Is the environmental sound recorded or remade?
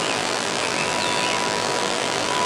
remade